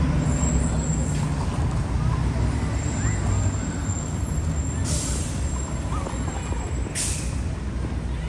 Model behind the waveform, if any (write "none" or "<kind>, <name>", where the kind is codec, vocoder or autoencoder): none